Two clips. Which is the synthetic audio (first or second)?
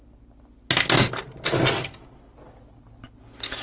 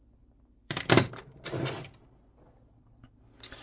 second